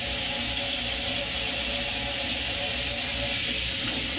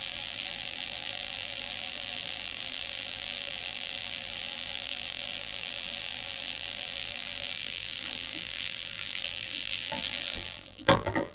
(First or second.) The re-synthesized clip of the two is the second